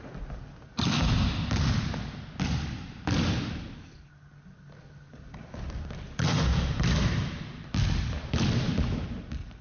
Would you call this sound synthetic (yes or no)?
no